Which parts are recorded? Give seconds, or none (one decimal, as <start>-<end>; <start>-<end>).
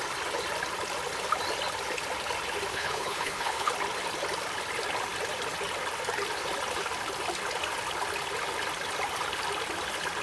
0.0-2.7; 3.7-10.2